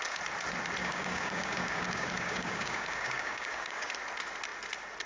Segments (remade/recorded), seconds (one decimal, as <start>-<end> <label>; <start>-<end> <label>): 0.0-0.8 recorded; 0.8-3.9 remade; 3.9-5.1 recorded